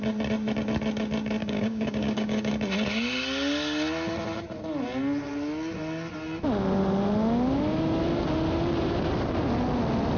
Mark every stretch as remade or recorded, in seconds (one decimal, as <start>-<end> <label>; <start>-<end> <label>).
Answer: 0.0-1.4 recorded; 1.4-2.5 remade; 2.5-10.2 recorded